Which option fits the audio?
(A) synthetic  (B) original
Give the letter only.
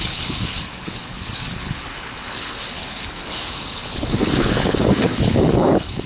A